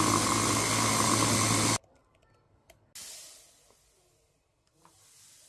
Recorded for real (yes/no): yes